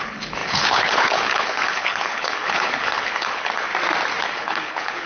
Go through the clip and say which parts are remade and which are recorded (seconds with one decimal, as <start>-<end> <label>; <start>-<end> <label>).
0.0-3.7 remade; 3.7-4.2 recorded; 4.2-5.1 remade